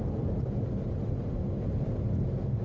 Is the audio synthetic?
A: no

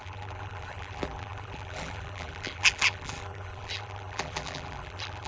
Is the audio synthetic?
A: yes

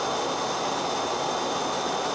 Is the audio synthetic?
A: no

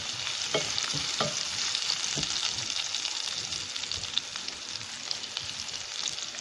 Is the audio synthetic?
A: no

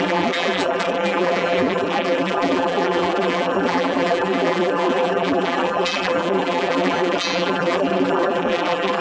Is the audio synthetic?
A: yes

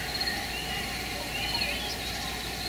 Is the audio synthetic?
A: yes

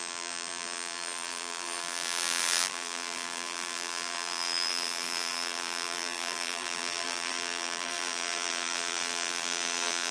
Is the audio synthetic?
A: yes